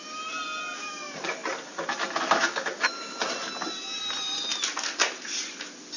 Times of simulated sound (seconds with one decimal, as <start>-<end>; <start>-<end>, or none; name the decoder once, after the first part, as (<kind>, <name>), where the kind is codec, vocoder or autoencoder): none